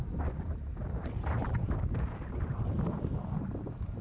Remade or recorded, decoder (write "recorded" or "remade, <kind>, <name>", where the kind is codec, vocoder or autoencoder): recorded